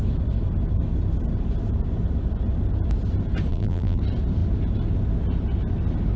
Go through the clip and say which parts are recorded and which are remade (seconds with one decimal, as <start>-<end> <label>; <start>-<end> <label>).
0.0-3.5 recorded; 3.5-4.0 remade; 4.0-6.2 recorded